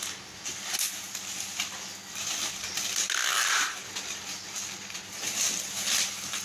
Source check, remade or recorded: recorded